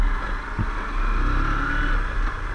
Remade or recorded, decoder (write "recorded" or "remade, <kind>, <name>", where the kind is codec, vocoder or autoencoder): recorded